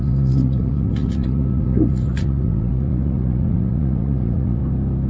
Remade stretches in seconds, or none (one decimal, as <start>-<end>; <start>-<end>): 0.0-4.6